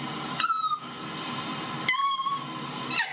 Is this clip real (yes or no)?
yes